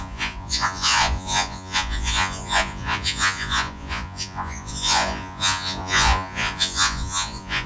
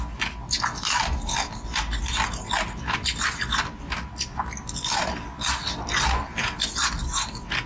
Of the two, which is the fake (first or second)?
first